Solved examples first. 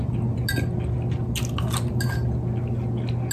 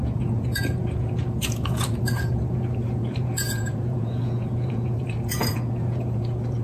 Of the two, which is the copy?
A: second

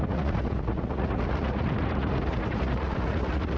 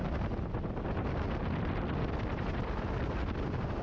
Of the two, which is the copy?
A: first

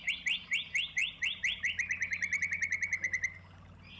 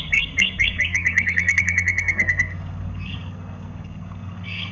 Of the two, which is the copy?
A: second